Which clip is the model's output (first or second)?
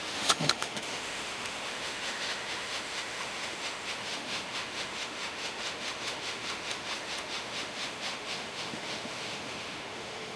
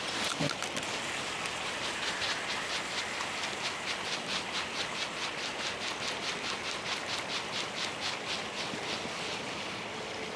first